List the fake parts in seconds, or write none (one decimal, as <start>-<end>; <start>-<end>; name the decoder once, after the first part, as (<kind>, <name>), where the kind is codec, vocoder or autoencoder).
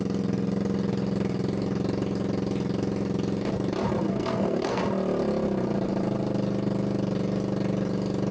4.0-4.8 (codec, SNAC)